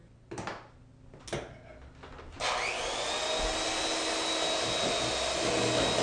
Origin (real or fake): real